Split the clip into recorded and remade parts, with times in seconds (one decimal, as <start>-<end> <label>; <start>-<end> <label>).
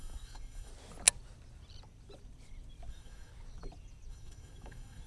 0.0-0.7 remade; 0.7-2.9 recorded; 2.9-3.3 remade; 3.3-4.1 recorded; 4.1-5.1 remade